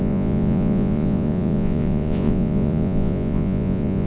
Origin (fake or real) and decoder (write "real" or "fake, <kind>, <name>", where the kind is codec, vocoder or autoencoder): fake, vocoder, Vocos